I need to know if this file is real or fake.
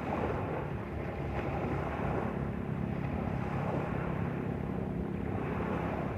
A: fake